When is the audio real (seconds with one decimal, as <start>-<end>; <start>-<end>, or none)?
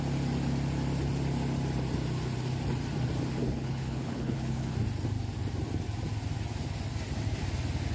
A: 0.0-3.4; 4.7-7.9